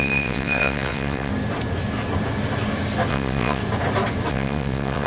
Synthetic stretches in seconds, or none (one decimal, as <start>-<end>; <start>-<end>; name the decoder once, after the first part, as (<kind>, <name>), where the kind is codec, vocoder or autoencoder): 0.0-1.3 (vocoder, WaveNeXt); 3.1-3.6; 4.3-5.1